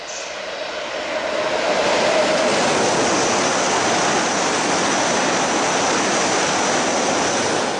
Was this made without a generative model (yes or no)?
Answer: yes